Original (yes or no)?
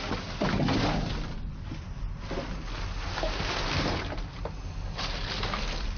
yes